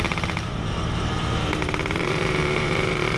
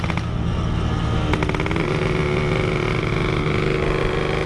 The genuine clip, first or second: second